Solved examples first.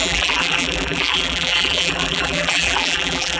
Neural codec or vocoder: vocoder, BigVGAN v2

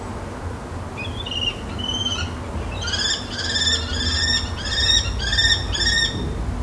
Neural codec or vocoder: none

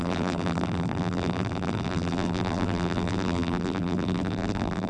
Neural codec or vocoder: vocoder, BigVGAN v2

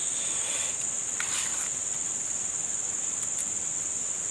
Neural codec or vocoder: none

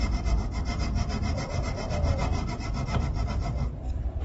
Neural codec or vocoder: none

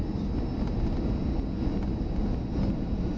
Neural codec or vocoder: none